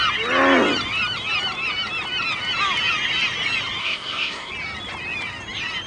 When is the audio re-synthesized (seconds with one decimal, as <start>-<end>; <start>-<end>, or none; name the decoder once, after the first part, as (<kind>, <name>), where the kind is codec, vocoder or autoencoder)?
3.8-4.5 (codec, SNAC)